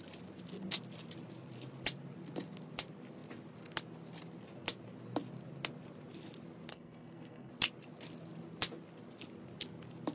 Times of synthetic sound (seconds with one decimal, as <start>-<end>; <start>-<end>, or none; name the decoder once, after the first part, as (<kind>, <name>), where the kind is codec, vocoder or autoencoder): 6.7-7.5 (codec, SNAC)